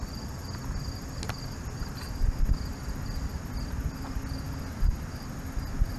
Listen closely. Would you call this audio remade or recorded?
recorded